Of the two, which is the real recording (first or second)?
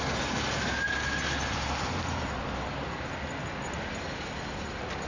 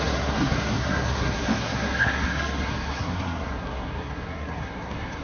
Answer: first